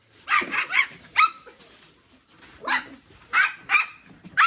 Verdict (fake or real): fake